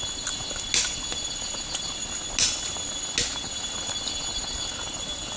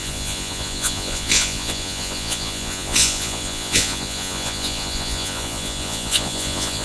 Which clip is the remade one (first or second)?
second